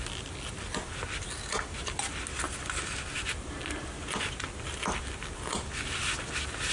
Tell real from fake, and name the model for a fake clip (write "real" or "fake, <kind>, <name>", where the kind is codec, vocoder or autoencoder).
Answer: real